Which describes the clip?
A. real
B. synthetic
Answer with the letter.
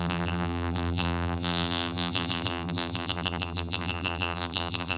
B